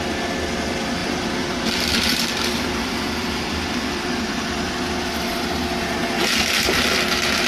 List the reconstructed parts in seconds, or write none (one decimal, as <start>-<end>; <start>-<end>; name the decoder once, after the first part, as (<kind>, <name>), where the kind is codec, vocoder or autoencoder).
1.0-4.7 (vocoder, BigVGAN v2)